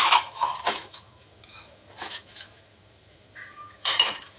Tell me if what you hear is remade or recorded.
remade